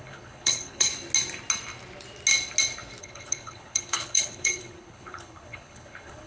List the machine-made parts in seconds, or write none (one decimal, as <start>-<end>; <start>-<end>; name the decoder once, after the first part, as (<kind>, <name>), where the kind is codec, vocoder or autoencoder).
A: 0.0-0.9 (codec, HILCodec); 3.0-6.3